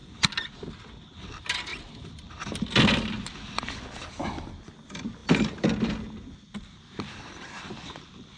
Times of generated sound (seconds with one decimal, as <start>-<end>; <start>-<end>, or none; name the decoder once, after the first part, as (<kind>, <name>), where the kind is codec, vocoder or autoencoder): none